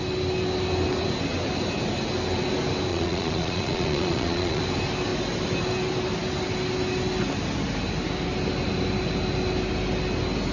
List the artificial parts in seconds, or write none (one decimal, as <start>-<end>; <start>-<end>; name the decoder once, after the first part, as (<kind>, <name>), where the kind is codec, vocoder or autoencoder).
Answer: 2.9-4.6 (vocoder, Vocos)